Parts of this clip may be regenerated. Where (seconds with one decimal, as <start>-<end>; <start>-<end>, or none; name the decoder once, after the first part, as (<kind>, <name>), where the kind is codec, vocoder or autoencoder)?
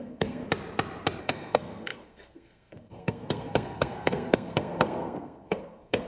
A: 0.0-0.4 (codec, SNAC); 1.2-6.1